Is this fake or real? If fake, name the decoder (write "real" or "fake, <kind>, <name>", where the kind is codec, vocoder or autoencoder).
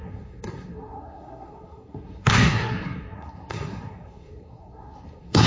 fake, codec, SNAC